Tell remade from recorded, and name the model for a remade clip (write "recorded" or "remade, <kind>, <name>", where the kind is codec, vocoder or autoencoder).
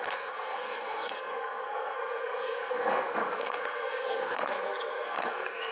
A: remade, codec, SNAC